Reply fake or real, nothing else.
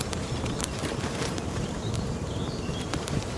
fake